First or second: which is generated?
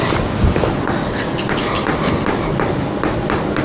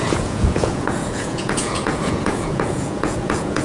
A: second